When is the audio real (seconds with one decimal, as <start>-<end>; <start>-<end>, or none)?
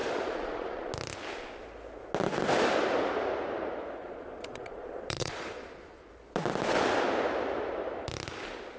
0.9-4.0; 6.1-8.8